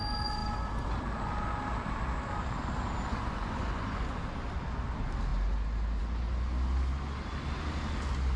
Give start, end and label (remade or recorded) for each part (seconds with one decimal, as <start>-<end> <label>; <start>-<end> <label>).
0.0-3.1 recorded; 3.1-4.2 remade; 4.2-8.4 recorded